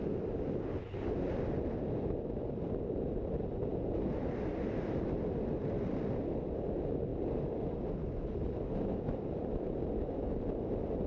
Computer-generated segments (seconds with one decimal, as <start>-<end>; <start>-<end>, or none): none